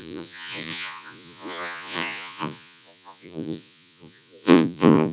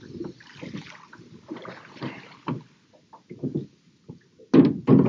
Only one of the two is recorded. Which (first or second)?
second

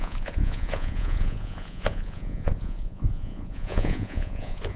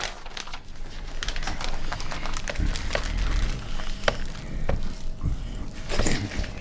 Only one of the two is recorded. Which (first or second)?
second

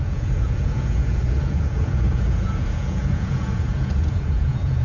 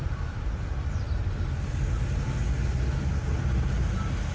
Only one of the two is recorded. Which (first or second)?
second